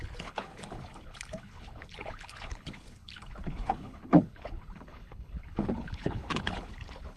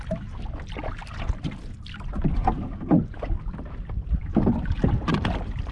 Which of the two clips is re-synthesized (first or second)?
first